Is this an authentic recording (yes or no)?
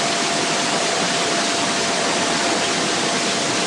yes